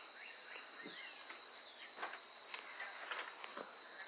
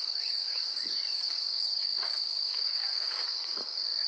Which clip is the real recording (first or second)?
first